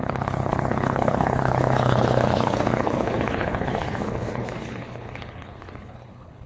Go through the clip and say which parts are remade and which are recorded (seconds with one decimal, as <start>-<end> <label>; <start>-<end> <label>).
0.0-6.5 remade